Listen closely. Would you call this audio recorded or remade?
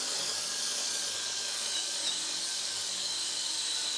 remade